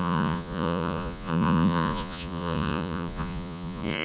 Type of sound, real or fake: fake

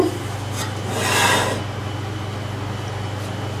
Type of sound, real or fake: real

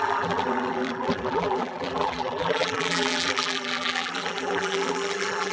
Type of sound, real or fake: fake